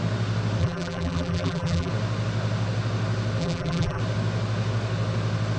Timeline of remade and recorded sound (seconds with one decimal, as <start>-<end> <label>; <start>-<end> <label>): 0.0-0.6 recorded; 0.6-1.9 remade; 1.9-3.4 recorded; 3.4-4.0 remade; 4.0-5.6 recorded